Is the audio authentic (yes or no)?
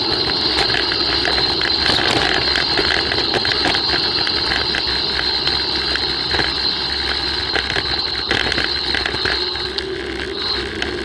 yes